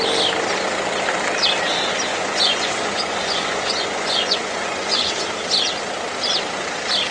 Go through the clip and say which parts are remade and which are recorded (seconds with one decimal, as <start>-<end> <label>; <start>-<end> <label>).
0.0-2.1 recorded; 2.1-5.1 remade; 5.1-7.1 recorded